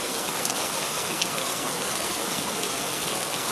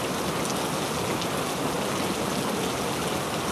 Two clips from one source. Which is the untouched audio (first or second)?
second